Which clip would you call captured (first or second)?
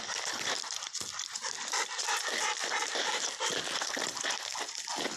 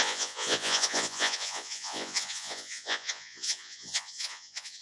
first